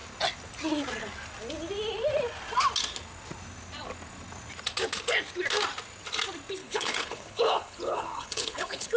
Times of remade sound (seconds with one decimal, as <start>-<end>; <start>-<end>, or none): 6.6-9.0